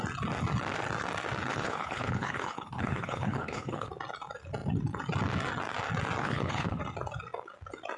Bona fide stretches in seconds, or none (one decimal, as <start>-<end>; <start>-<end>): 0.0-1.5; 3.9-6.2; 6.8-8.0